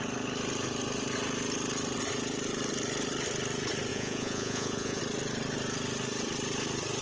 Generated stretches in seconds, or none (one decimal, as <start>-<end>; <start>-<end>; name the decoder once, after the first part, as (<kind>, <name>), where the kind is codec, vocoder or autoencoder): 3.9-5.0 (vocoder, Vocos)